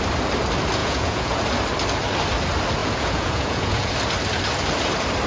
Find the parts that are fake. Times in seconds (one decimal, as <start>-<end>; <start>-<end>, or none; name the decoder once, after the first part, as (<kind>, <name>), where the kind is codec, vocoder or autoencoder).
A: 0.8-1.4 (vocoder, Vocos); 2.8-3.9